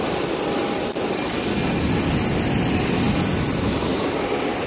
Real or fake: real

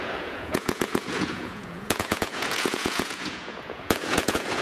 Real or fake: fake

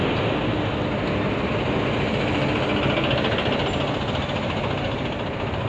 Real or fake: real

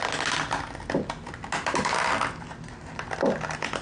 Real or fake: real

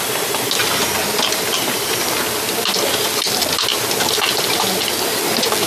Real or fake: real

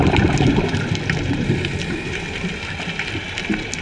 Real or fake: fake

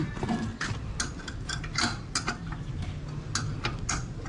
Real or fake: real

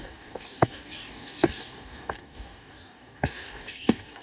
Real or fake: fake